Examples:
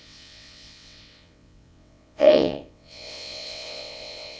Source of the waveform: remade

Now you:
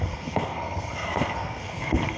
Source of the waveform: remade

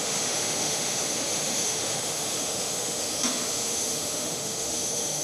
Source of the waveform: remade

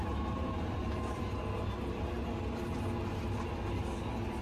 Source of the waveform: recorded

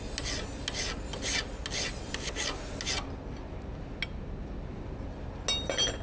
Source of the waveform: recorded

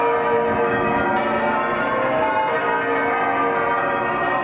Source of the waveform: recorded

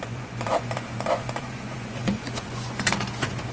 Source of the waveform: remade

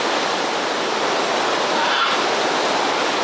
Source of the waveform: recorded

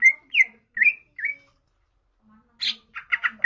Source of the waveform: recorded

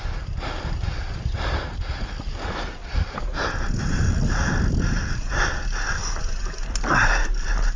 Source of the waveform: recorded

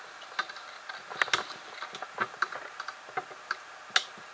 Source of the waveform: recorded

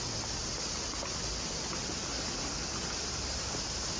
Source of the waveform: recorded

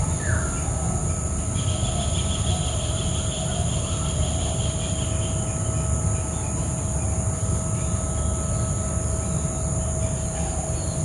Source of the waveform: recorded